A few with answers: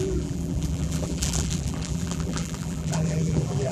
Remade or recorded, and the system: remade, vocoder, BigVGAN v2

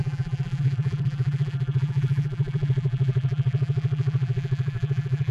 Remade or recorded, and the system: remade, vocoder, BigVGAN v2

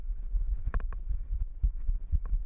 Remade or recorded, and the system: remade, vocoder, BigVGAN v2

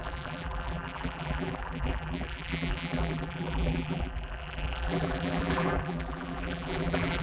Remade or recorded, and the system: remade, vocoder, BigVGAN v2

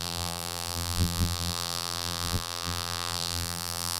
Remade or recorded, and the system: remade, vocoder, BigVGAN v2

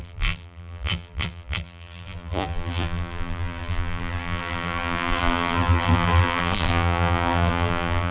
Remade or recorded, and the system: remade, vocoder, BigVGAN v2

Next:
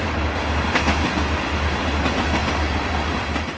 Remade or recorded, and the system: recorded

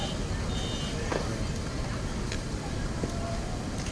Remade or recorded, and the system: recorded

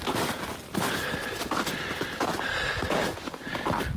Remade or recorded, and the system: recorded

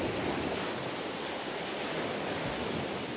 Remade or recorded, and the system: recorded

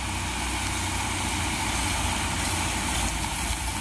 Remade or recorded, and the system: recorded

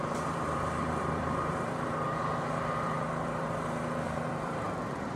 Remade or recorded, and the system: remade, vocoder, BigVGAN v2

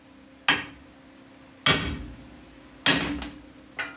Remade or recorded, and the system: recorded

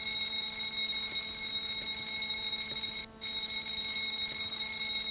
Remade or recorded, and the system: recorded